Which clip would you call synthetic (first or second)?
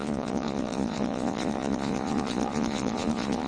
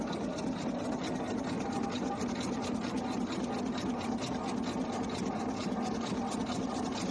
first